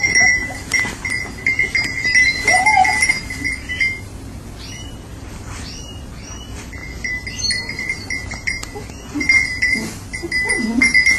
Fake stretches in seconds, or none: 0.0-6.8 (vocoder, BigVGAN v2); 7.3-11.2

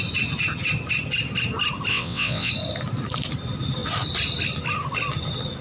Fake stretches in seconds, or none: 1.9-2.5 (vocoder, WaveNeXt)